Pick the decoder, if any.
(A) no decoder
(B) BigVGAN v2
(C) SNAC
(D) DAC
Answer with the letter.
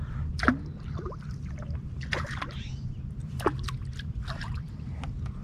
A